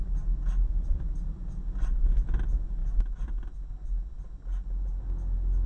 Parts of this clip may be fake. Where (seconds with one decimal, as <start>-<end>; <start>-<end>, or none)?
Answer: none